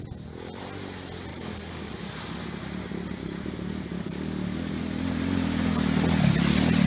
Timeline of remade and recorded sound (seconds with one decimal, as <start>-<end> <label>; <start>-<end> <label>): 0.0-1.3 recorded; 1.3-1.9 remade; 1.9-3.2 recorded; 3.2-4.7 remade; 4.7-6.9 recorded